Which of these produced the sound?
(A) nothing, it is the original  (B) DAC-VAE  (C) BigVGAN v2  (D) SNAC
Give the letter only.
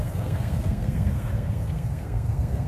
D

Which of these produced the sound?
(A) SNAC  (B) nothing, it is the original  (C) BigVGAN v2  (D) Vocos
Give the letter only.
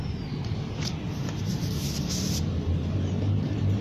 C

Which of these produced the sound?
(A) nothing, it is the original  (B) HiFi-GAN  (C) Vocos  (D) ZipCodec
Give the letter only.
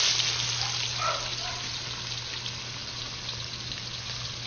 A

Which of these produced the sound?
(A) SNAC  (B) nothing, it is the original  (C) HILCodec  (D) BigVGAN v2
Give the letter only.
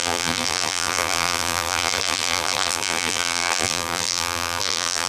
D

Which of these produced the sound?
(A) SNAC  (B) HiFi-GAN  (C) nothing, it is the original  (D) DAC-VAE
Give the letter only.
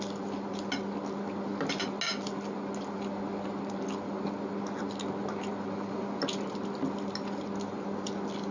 C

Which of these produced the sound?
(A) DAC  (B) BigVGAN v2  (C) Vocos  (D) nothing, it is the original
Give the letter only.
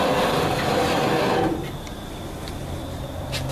B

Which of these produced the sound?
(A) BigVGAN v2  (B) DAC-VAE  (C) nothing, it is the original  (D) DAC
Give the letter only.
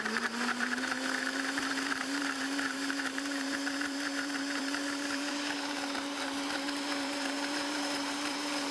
A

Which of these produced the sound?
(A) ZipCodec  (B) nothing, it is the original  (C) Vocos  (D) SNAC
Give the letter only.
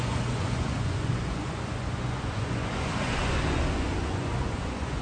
C